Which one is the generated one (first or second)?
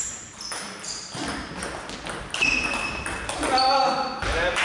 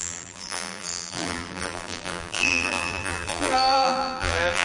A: second